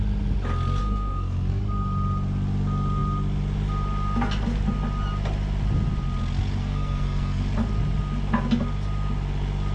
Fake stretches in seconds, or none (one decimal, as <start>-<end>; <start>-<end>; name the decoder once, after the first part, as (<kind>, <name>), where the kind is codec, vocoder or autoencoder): 0.8-1.6 (codec, SNAC); 6.6-7.4